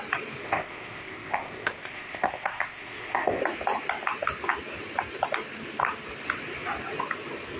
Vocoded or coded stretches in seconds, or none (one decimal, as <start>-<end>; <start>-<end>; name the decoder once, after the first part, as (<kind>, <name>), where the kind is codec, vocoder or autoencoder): 0.4-3.4 (codec, ZipCodec)